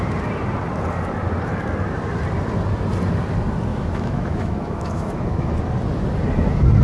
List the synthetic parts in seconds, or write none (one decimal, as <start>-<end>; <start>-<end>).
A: 3.7-5.5